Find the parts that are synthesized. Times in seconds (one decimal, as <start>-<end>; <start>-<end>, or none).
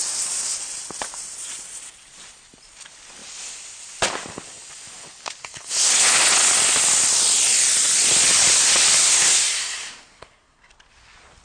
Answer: 5.4-5.9; 9.0-10.6